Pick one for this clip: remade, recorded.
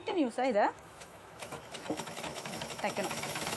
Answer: remade